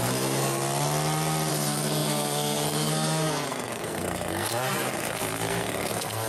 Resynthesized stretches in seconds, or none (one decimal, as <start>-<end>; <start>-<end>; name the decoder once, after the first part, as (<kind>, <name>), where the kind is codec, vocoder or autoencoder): 0.0-0.6 (codec, SNAC); 1.5-6.3